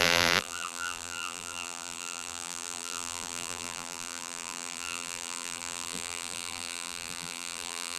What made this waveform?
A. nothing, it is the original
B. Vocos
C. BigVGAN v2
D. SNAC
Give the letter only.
C